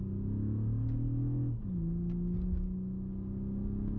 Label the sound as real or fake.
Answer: real